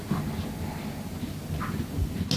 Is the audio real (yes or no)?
yes